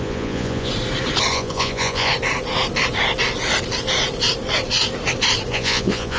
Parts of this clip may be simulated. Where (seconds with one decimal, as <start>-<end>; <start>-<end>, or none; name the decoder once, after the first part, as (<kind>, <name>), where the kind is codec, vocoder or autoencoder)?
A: 0.0-0.7 (vocoder, Vocos); 1.3-2.1; 5.5-6.2